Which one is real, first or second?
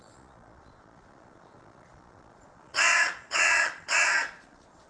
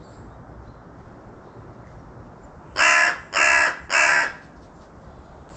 second